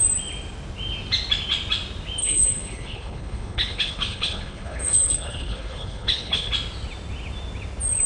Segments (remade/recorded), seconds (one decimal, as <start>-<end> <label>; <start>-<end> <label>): 0.0-2.2 recorded; 2.2-6.5 remade; 6.5-8.1 recorded